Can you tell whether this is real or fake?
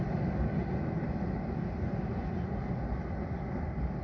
real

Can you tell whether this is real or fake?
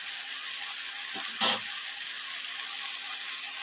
real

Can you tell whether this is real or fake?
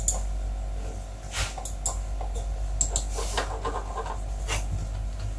real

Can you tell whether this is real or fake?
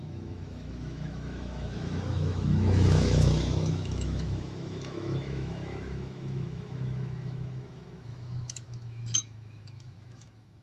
fake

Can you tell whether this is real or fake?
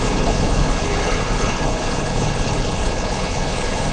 fake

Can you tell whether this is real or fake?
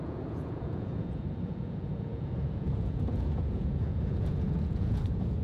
fake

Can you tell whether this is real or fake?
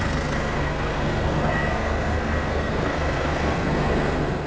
fake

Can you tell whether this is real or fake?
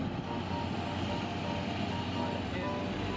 real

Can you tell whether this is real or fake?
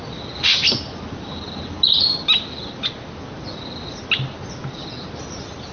real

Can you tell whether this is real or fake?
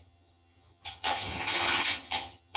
fake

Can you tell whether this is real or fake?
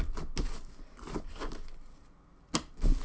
real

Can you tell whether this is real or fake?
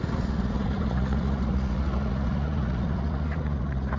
fake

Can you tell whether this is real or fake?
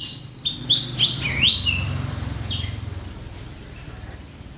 fake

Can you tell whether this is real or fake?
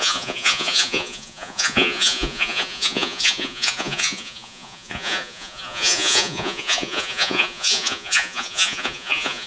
fake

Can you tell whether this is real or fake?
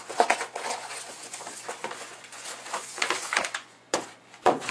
fake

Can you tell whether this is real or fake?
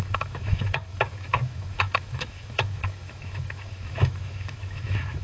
fake